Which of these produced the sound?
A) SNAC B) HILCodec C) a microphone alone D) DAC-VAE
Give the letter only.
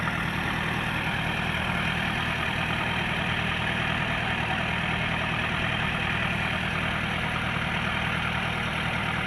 C